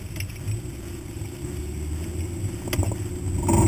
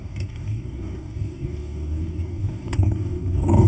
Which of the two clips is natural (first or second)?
first